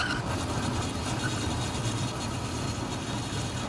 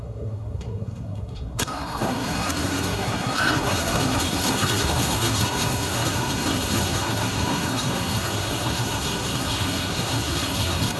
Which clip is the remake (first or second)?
second